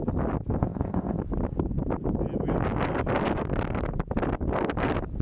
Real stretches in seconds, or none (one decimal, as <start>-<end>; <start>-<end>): 0.0-0.6; 1.2-5.2